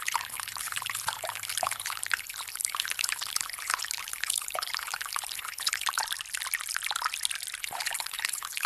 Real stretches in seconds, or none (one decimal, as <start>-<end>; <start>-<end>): 6.0-7.6